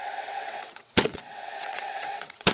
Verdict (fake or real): fake